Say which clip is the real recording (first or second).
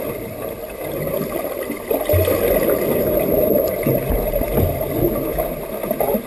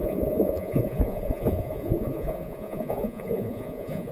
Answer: first